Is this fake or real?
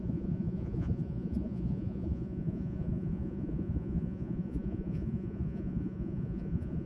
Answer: fake